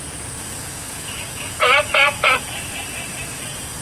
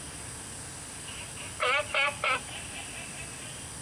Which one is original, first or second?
second